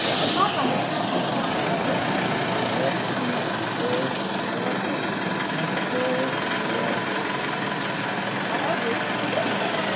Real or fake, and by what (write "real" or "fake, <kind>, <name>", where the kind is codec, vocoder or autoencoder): real